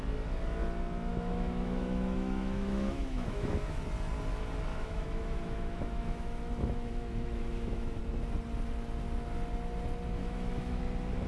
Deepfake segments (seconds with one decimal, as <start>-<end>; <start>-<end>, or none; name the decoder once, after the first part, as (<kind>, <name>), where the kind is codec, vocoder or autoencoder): 1.1-3.8 (autoencoder, DAC-VAE); 4.7-8.0; 10.2-10.8

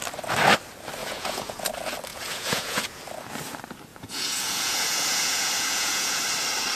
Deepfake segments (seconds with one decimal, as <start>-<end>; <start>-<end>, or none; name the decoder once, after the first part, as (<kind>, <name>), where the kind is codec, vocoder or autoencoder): 1.0-1.7 (vocoder, Vocos); 2.1-3.0; 3.9-6.2

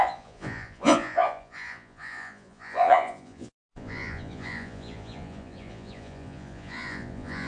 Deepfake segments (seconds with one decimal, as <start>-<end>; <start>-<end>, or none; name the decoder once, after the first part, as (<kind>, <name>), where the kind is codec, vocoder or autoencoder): 0.0-7.5 (vocoder, Vocos)

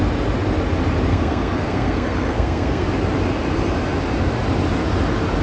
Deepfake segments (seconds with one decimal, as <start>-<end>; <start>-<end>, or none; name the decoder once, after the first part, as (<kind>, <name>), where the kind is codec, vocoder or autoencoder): 1.1-2.9 (codec, SNAC)

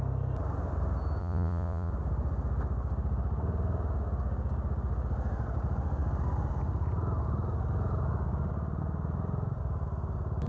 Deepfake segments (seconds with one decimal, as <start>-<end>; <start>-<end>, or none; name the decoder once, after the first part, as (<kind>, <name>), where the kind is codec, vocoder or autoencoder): 1.2-1.9 (vocoder, Vocos)

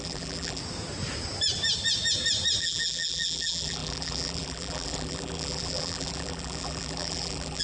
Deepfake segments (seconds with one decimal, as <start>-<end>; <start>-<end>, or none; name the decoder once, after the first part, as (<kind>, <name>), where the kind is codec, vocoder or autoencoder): 0.0-0.6 (vocoder, BigVGAN v2); 2.6-7.6